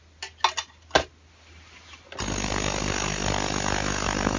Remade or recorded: recorded